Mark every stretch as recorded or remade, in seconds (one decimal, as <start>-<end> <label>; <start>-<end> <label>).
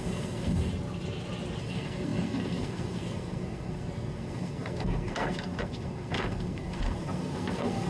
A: 0.0-0.7 remade; 0.7-1.6 recorded; 1.6-7.9 remade